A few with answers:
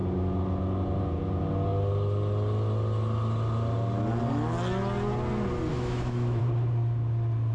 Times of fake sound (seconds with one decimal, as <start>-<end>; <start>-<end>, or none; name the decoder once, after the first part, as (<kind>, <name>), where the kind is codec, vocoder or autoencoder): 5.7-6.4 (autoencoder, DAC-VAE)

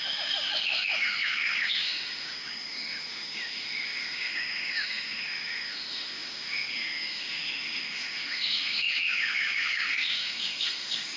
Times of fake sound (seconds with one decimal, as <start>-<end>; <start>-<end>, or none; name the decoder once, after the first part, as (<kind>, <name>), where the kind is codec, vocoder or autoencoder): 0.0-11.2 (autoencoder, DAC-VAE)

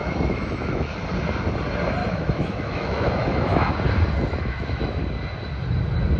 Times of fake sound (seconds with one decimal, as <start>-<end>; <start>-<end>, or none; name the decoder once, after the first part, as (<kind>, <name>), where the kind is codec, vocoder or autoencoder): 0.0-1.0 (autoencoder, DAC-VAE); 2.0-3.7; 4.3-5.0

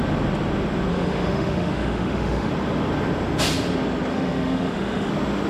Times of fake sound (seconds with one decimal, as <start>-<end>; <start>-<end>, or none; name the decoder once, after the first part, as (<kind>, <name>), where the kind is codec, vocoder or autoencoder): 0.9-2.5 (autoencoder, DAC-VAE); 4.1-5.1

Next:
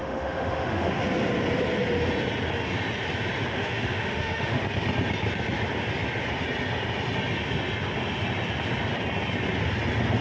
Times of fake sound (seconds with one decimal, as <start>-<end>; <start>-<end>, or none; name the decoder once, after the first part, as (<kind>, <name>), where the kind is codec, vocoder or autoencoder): 0.0-1.0 (autoencoder, DAC-VAE); 3.5-4.6